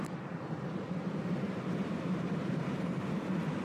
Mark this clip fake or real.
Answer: fake